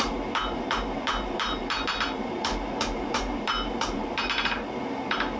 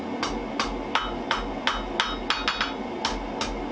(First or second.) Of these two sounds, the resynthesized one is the first